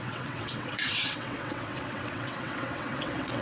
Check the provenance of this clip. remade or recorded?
remade